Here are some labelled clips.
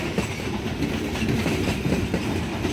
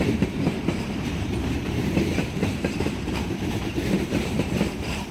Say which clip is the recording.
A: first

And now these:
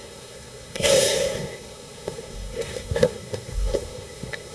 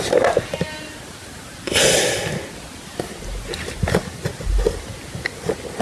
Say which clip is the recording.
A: second